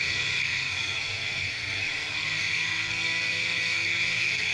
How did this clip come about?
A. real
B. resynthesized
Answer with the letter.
B